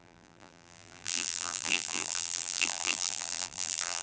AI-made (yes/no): yes